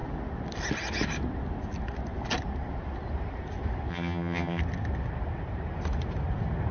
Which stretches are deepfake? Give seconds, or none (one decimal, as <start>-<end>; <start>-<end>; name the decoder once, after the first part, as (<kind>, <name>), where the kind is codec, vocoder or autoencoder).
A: 3.9-4.6 (vocoder, HiFi-GAN)